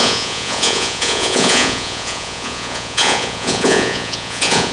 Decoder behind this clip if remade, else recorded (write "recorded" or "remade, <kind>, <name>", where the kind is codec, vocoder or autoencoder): remade, vocoder, Vocos